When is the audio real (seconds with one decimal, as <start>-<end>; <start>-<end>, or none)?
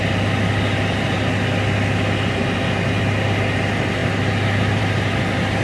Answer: 0.0-5.6